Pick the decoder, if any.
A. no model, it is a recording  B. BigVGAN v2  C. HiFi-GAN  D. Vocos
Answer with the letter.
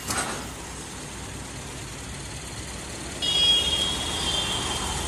A